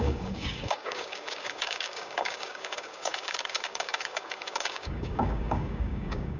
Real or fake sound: fake